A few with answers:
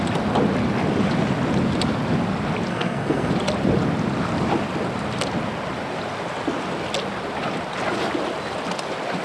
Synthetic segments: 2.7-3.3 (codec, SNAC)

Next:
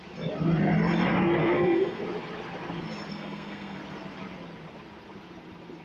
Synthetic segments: 1.4-2.0 (codec, SNAC); 3.1-3.8

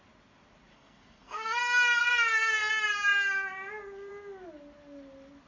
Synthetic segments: 0.7-1.6 (codec, SNAC); 2.0-2.7

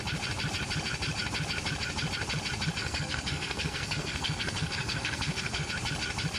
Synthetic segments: 2.8-5.7 (codec, SNAC)

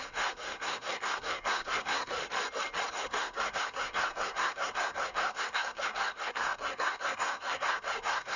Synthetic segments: 0.0-2.2 (codec, SNAC); 2.9-8.4

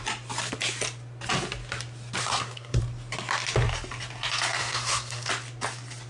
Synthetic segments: 2.2-2.8 (codec, SNAC); 4.6-5.3

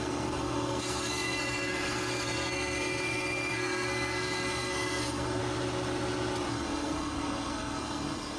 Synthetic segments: 0.0-5.4 (codec, SNAC); 6.5-8.4

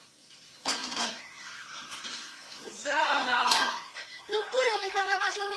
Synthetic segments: 0.0-5.6 (codec, SNAC)